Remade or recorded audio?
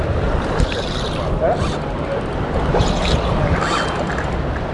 recorded